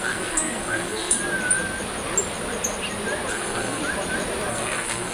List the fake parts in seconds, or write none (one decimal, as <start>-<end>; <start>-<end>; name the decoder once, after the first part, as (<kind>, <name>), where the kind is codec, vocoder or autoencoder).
0.0-1.2 (codec, SNAC); 3.3-3.8; 4.5-5.1